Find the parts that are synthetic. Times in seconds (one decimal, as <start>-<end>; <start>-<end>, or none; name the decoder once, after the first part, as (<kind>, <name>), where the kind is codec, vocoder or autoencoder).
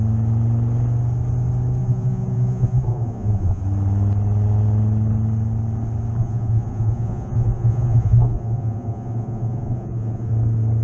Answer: 1.8-3.6 (vocoder, Vocos); 6.2-10.3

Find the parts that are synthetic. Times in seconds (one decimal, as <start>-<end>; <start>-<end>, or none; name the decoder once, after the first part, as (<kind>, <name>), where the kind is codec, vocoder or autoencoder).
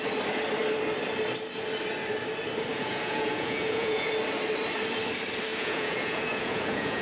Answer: 2.7-4.1 (vocoder, Vocos); 5.5-7.0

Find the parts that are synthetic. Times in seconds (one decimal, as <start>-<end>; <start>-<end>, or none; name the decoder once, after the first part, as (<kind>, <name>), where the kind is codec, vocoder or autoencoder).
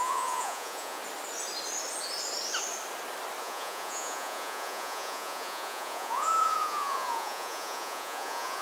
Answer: 0.0-1.0 (vocoder, Vocos); 3.4-8.6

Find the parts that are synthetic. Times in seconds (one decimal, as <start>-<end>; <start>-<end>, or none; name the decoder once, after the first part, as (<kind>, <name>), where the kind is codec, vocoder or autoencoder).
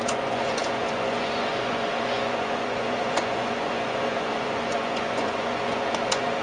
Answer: 0.0-6.4 (vocoder, Vocos)